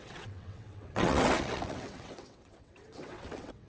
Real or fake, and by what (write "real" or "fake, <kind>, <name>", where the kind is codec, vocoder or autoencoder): fake, vocoder, WaveNeXt